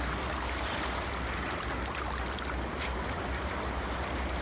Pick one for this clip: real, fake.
real